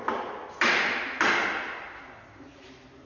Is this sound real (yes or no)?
yes